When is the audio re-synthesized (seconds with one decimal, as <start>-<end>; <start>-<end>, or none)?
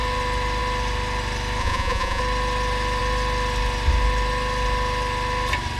1.6-2.2